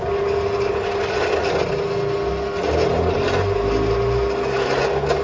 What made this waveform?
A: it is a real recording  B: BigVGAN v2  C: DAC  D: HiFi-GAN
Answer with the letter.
A